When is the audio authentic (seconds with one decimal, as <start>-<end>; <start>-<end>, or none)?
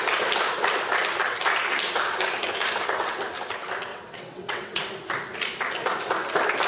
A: 0.0-3.9; 4.8-6.7